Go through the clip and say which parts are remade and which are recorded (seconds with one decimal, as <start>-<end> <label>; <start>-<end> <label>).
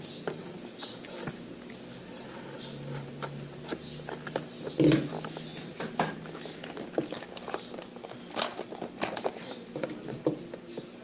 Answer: 0.0-11.0 recorded